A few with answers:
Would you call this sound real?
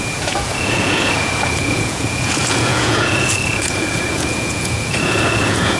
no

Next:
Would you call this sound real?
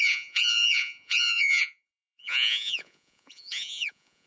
no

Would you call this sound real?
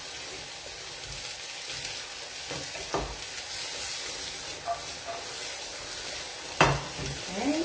yes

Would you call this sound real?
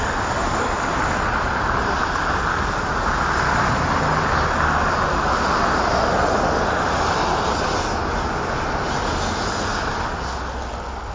yes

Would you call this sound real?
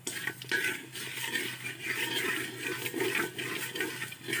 yes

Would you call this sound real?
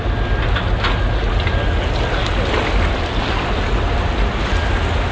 yes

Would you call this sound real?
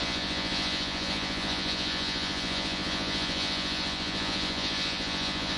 no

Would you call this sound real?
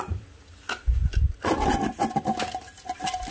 yes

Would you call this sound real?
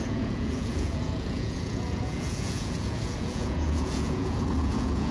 no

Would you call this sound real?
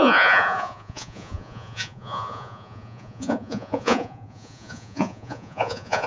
no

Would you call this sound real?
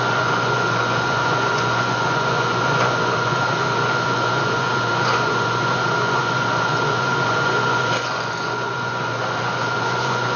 no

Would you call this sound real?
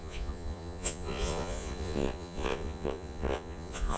no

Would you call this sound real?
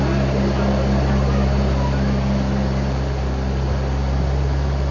yes